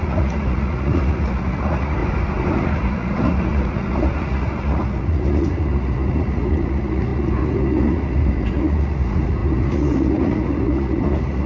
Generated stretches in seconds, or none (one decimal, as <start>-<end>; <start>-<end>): 0.0-2.0; 2.5-11.5